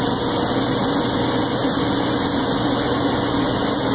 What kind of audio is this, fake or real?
real